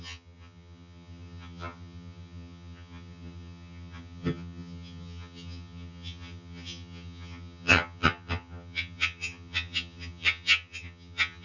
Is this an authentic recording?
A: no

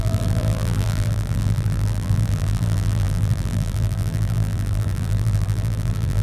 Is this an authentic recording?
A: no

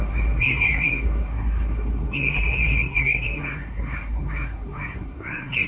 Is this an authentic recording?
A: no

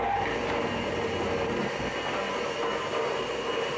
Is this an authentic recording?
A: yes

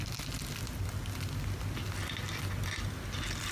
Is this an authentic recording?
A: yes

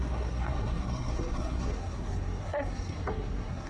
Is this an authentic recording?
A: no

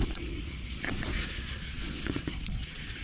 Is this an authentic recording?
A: no